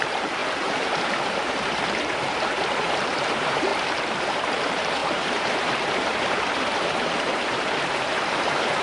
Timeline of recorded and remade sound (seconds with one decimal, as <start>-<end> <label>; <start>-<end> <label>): 0.0-3.7 remade; 3.7-4.2 recorded; 4.2-8.8 remade